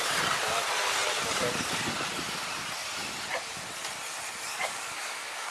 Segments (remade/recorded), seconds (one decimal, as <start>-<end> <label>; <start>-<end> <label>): 0.0-4.5 recorded; 4.5-5.5 remade